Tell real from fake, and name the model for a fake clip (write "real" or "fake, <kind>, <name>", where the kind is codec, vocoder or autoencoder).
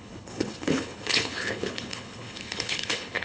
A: fake, codec, HILCodec